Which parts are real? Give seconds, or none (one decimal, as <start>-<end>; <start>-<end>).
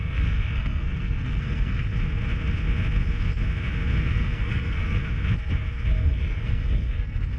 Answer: 1.9-4.0; 5.0-6.0